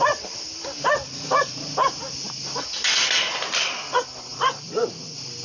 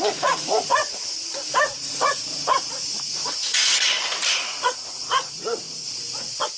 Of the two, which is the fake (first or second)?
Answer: second